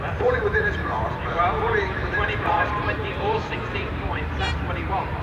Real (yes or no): no